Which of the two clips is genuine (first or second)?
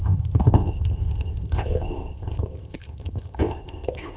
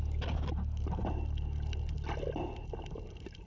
second